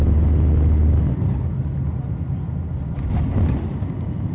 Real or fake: real